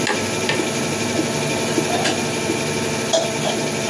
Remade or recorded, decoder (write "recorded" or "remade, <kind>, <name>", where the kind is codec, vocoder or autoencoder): recorded